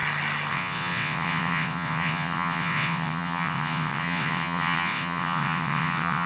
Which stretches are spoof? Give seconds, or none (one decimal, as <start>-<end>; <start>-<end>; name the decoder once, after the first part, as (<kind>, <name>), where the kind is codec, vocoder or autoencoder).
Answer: 0.5-6.3 (vocoder, WaveNeXt)